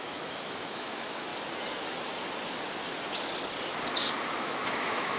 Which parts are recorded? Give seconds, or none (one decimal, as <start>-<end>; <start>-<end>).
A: 1.3-4.4